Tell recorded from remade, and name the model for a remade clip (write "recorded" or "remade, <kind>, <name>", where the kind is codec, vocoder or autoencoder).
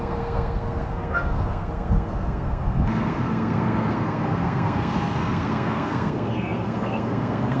remade, codec, SNAC